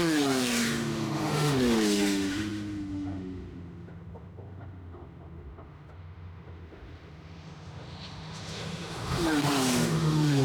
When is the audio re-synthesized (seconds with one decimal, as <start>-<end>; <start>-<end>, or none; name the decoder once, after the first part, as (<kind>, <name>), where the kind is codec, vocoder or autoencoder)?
0.0-10.4 (autoencoder, DAC-VAE)